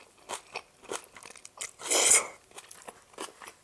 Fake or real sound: real